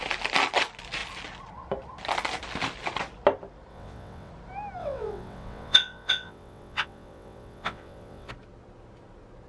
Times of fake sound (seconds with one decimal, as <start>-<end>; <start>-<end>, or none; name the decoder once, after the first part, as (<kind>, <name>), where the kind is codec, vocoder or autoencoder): 3.7-4.3 (vocoder, WaveNeXt); 4.8-8.3